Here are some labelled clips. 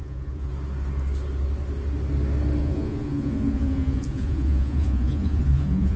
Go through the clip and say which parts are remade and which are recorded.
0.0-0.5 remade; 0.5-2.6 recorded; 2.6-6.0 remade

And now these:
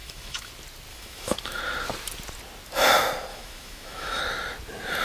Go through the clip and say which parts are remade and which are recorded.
0.0-0.5 remade; 0.5-0.9 recorded; 0.9-1.6 remade; 1.6-3.3 recorded; 3.3-4.2 remade; 4.2-5.0 recorded

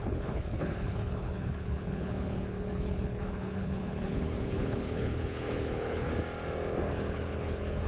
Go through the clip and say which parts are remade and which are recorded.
0.0-6.1 remade; 6.1-7.0 recorded; 7.0-7.9 remade

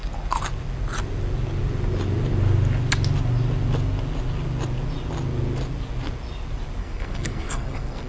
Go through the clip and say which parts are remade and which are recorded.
0.0-6.8 recorded; 6.8-8.1 remade

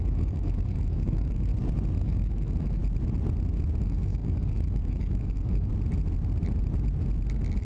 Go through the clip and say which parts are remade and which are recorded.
0.0-1.5 remade; 1.5-2.0 recorded; 2.0-2.8 remade; 2.8-3.8 recorded; 3.8-5.7 remade; 5.7-7.6 recorded

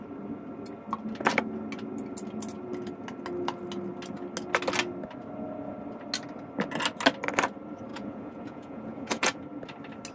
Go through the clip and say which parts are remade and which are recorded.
0.0-7.9 recorded; 7.9-9.4 remade; 9.4-10.1 recorded

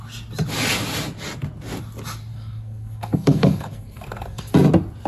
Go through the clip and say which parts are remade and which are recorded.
0.0-2.3 recorded; 2.3-4.5 remade; 4.5-5.1 recorded